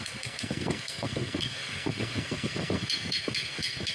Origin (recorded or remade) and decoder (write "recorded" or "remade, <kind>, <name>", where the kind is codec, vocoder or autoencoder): remade, codec, SNAC